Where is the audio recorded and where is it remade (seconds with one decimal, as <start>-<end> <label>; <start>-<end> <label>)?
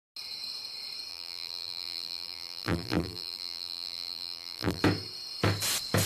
0.0-1.1 recorded; 1.1-4.8 remade; 4.8-6.1 recorded